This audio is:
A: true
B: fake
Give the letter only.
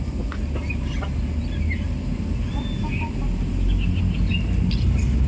A